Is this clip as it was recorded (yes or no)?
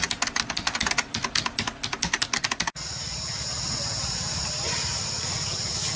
yes